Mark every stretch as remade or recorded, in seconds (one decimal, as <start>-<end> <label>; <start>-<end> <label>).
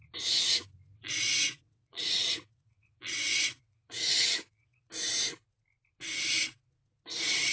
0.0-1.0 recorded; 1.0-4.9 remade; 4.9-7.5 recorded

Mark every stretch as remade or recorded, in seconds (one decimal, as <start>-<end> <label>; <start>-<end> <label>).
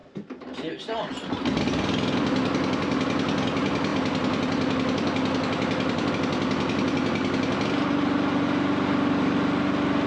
0.0-10.1 recorded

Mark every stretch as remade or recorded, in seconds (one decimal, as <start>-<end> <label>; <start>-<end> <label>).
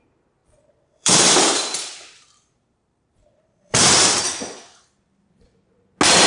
0.0-0.4 recorded; 0.4-4.2 remade; 4.2-6.3 recorded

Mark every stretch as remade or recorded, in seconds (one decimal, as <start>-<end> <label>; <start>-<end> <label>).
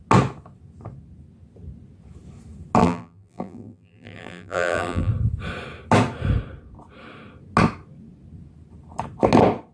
0.0-2.8 recorded; 2.8-5.1 remade; 5.1-9.7 recorded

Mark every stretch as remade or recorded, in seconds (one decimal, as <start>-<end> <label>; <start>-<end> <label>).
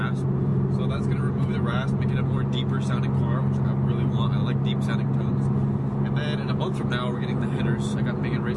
0.0-8.6 recorded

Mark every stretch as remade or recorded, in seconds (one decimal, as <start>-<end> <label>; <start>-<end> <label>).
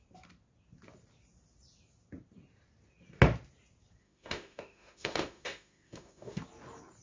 0.0-4.0 recorded; 4.0-6.4 remade; 6.4-7.0 recorded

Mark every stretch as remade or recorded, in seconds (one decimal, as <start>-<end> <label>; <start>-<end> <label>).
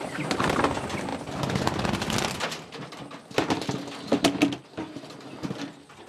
0.0-6.1 recorded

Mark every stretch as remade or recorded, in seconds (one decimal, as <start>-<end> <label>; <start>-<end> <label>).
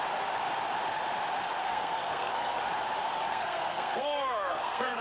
0.0-1.6 recorded; 1.6-2.6 remade; 2.6-3.3 recorded; 3.3-5.0 remade